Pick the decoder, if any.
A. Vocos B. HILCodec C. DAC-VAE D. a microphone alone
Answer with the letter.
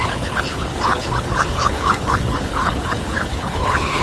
B